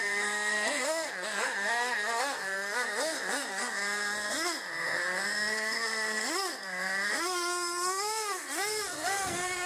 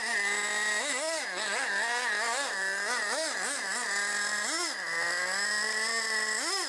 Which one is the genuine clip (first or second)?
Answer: second